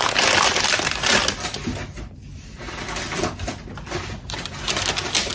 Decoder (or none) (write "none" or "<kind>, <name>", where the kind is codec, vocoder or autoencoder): none